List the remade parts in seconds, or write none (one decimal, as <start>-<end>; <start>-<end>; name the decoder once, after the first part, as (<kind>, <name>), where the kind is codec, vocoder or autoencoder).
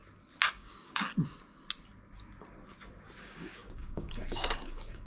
0.5-1.1 (codec, DAC); 3.2-5.1